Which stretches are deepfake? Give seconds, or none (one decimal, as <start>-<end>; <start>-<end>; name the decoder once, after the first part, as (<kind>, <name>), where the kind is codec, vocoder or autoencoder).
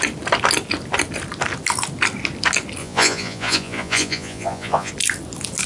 2.8-4.9 (vocoder, Vocos)